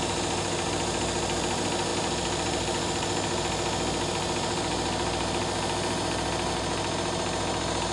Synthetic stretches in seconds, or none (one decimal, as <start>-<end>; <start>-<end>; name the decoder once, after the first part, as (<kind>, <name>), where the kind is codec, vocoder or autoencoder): none